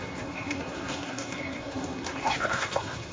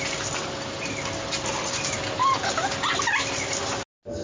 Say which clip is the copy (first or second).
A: first